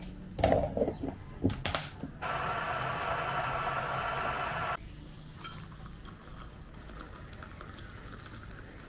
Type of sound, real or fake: real